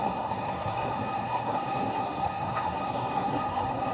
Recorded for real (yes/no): no